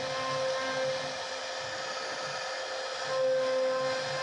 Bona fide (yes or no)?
yes